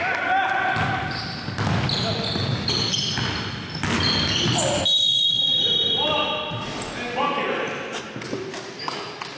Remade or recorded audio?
recorded